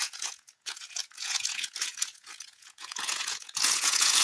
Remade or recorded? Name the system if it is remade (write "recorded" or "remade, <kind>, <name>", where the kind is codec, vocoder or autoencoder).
remade, vocoder, Vocos